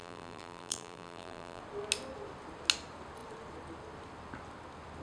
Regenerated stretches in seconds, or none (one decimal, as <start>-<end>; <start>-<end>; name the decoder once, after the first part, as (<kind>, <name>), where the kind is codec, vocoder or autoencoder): 0.0-1.6 (vocoder, BigVGAN v2)